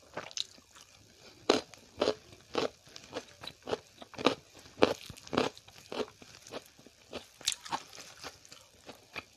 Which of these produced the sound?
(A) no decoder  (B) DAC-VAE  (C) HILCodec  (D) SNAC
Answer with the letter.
A